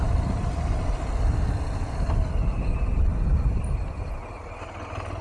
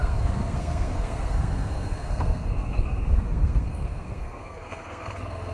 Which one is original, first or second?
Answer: first